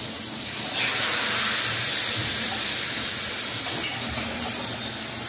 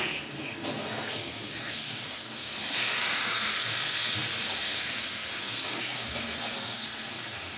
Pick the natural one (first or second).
first